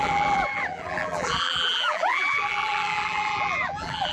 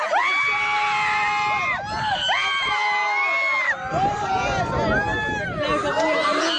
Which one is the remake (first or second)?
first